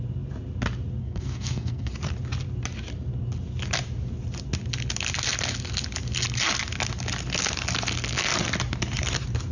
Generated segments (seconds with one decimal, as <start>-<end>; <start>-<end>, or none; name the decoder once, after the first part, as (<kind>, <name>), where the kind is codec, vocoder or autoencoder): 1.0-1.9 (codec, SNAC)